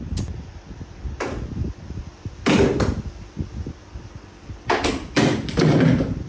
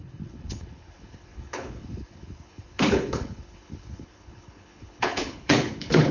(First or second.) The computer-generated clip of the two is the second